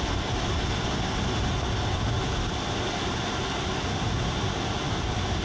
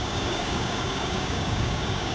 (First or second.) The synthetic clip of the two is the second